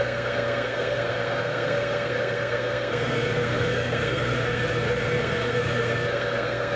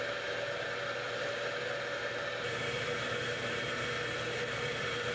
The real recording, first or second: second